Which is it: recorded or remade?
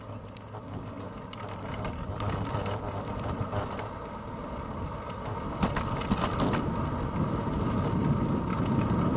recorded